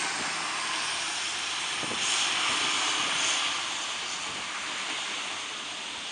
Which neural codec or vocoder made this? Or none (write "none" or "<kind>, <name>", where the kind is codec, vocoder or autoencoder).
none